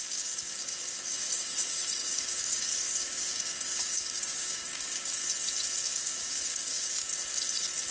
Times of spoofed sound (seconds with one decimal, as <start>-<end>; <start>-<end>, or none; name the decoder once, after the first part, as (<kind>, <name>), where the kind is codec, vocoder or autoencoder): 0.0-5.2 (codec, DAC); 5.9-7.1